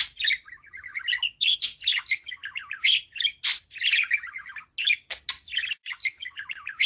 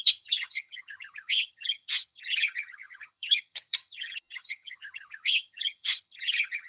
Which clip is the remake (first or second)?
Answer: second